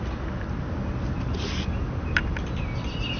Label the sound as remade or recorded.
recorded